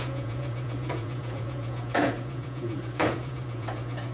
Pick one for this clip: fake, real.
fake